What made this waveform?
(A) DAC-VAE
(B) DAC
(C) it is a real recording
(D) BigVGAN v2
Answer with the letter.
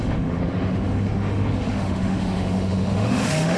A